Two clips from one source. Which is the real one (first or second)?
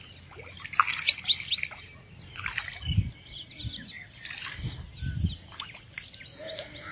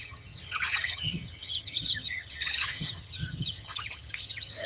first